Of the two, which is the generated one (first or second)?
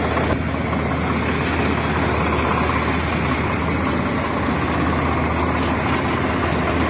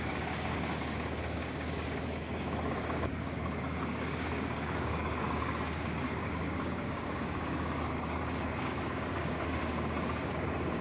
second